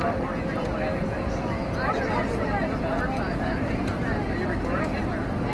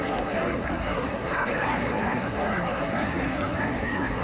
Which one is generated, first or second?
second